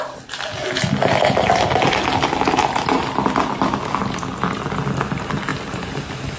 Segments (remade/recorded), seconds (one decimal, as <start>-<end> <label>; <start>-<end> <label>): 0.0-6.4 recorded